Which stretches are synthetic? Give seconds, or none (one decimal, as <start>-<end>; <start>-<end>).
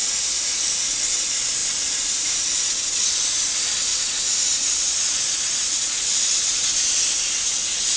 0.0-1.0; 3.9-6.5